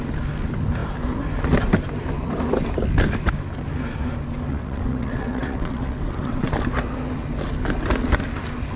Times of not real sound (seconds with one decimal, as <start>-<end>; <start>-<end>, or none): 4.5-6.5